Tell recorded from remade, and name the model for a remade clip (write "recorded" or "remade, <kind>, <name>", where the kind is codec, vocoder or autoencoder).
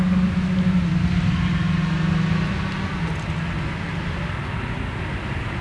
recorded